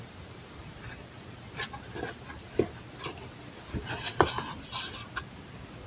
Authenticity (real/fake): real